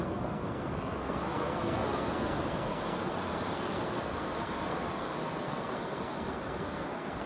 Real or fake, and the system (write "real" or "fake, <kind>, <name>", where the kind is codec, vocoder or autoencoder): fake, codec, SNAC